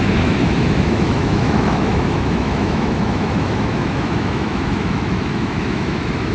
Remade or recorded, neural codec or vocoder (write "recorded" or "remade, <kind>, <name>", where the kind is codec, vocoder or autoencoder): remade, autoencoder, DAC-VAE